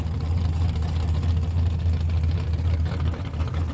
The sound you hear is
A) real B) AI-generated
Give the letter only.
A